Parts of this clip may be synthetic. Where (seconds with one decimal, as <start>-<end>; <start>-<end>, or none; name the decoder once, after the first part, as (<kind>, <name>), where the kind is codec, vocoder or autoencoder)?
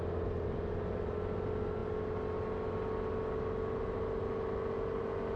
none